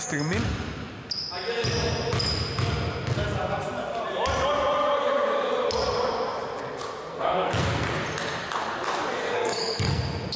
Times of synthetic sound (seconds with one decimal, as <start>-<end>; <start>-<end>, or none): 7.1-7.9; 9.2-10.0